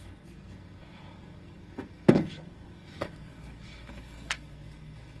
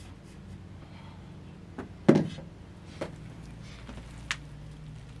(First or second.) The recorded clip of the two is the second